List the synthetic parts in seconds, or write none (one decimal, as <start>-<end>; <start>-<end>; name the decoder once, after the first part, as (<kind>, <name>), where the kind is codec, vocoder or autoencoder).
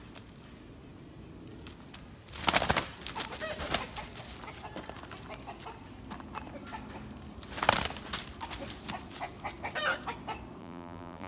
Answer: 10.6-11.3 (vocoder, BigVGAN v2)